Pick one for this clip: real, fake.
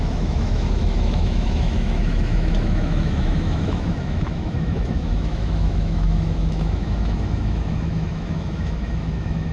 fake